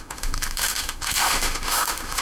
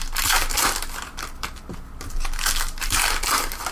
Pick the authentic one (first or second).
second